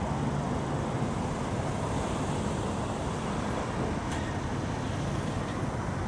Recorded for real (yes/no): yes